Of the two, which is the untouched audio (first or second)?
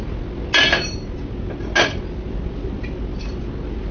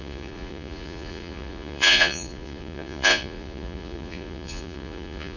first